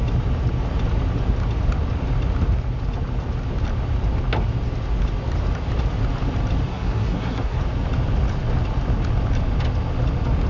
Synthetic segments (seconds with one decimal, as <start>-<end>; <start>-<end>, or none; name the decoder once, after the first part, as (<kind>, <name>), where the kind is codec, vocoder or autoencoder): 6.7-7.6 (codec, SNAC)